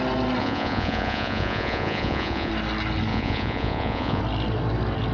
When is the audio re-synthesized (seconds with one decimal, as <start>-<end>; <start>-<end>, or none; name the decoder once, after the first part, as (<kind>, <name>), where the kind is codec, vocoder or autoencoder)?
0.4-2.5 (vocoder, Vocos); 3.1-4.2